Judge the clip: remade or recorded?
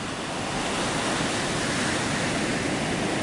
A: recorded